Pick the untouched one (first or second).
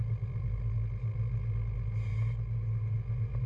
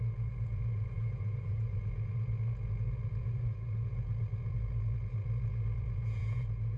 first